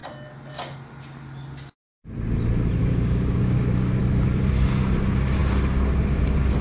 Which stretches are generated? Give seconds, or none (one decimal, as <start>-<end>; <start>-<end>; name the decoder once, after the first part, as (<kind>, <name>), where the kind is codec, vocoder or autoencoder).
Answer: 2.8-4.0 (codec, DAC)